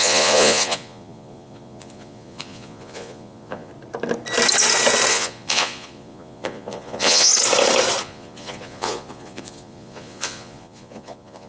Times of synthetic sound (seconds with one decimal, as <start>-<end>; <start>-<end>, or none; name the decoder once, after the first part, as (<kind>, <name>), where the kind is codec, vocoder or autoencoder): 0.0-3.7 (vocoder, Vocos); 5.1-7.3; 8.0-11.5